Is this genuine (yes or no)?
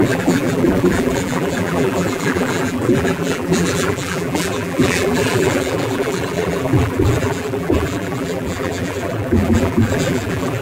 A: no